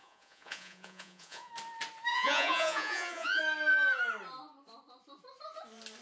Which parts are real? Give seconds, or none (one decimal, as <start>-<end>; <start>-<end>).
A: 1.5-2.1; 3.4-6.0